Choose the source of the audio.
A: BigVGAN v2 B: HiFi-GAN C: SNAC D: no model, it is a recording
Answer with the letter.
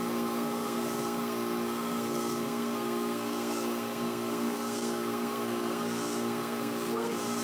C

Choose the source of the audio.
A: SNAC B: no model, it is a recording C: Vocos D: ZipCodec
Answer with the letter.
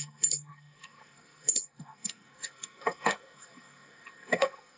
A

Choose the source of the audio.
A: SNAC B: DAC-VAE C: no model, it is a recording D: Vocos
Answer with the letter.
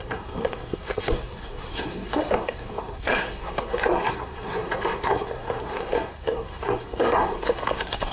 A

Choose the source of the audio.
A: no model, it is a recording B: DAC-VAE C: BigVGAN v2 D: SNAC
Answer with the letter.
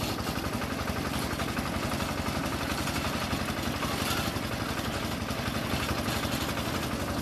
A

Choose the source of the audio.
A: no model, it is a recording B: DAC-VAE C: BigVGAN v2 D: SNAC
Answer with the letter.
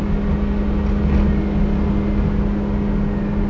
A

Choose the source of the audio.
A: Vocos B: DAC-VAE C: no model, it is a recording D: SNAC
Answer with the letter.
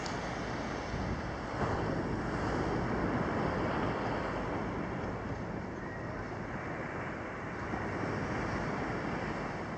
C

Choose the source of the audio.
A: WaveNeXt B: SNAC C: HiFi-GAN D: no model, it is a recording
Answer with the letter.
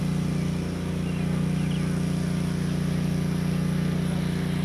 D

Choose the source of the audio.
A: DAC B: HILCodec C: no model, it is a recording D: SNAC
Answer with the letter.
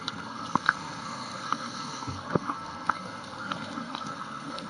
D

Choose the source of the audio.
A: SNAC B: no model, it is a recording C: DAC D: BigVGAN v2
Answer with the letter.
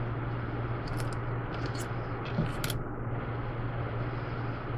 B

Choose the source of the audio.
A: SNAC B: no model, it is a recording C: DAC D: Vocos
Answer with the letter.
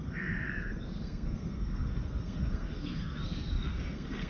A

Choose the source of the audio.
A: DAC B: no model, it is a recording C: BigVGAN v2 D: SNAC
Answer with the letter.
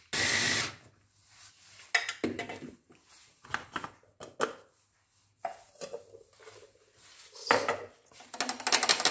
B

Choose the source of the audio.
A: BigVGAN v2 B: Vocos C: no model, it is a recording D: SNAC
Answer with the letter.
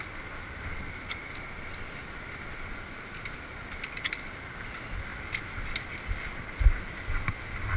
C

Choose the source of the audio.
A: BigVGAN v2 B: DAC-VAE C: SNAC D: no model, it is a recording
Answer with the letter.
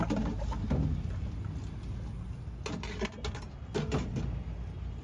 D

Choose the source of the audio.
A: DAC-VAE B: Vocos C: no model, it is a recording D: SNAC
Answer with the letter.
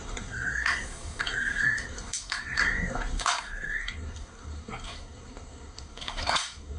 D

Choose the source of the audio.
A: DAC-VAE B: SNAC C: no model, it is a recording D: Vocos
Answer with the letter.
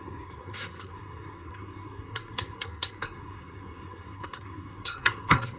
B